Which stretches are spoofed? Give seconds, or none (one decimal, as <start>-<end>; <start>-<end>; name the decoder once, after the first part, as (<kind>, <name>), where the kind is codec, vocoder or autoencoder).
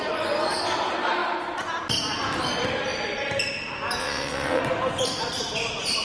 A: 4.0-4.6 (vocoder, WaveNeXt)